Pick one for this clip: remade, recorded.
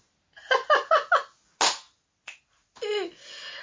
recorded